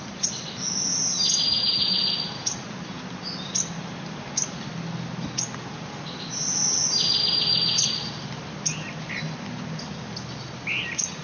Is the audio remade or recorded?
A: recorded